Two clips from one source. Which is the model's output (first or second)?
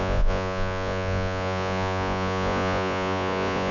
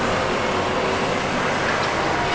first